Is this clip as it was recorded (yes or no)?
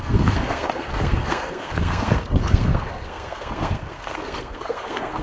no